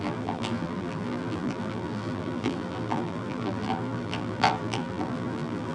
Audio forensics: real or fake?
fake